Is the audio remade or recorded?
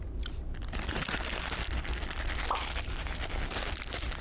recorded